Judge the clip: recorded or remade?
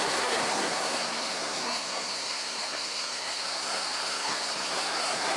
remade